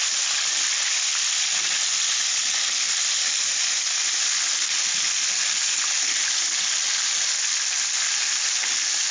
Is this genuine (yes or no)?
yes